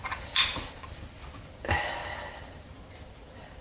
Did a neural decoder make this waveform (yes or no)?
no